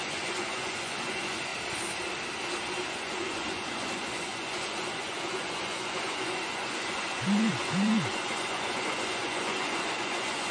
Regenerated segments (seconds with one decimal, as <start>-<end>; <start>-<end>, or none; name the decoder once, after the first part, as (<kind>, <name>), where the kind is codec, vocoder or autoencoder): 0.0-1.5 (vocoder, Vocos); 2.9-10.5